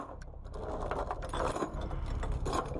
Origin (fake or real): real